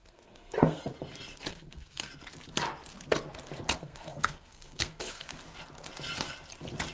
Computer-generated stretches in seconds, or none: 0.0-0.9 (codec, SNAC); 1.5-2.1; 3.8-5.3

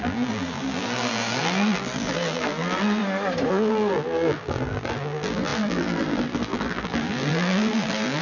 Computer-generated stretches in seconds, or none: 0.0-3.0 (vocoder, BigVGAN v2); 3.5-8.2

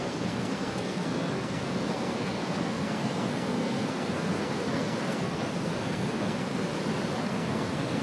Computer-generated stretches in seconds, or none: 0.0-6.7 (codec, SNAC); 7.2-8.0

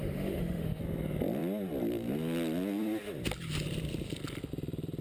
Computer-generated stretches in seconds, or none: 0.0-0.8 (autoencoder, DAC-VAE)

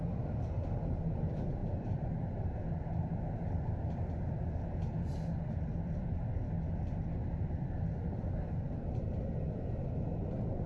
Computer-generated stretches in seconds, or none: 1.6-2.6 (vocoder, BigVGAN v2); 7.2-9.2

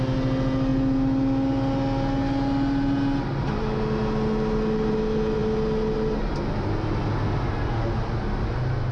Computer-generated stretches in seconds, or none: none